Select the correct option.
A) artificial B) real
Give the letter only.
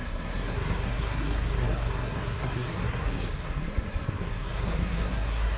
A